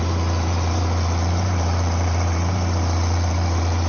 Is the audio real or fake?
fake